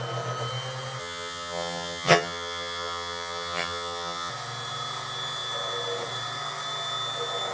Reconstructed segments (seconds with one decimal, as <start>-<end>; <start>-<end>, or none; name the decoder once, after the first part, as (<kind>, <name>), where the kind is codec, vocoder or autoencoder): 1.0-4.3 (vocoder, HiFi-GAN)